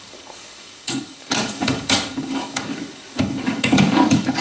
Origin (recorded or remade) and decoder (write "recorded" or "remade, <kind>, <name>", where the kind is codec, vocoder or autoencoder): remade, codec, DAC